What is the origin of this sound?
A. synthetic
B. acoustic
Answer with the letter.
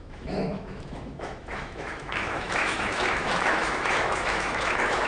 A